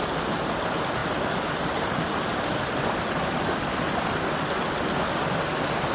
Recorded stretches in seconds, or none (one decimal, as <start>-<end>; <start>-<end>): 0.0-5.9